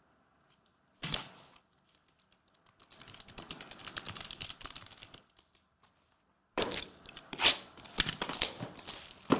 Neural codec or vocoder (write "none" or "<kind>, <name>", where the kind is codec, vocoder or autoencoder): vocoder, BigVGAN v2